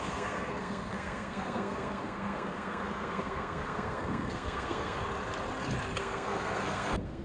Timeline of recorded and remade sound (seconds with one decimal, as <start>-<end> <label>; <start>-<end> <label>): 0.0-5.0 remade; 5.0-6.0 recorded; 6.0-7.2 remade